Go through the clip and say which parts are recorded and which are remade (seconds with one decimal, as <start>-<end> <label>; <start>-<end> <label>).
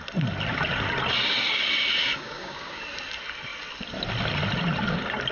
0.0-2.0 recorded; 2.0-2.8 remade; 2.8-5.3 recorded